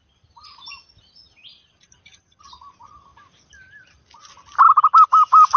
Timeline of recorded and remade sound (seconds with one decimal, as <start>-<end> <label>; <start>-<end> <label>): 0.0-5.6 recorded